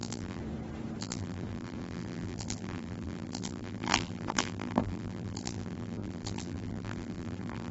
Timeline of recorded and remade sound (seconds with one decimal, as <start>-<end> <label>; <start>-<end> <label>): 0.0-0.4 remade; 0.4-1.0 recorded; 1.0-7.7 remade